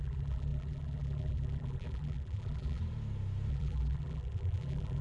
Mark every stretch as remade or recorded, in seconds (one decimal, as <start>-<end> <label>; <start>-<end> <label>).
0.0-2.8 remade; 2.8-3.5 recorded; 3.5-5.0 remade